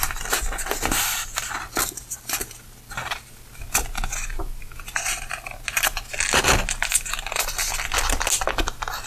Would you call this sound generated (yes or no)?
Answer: no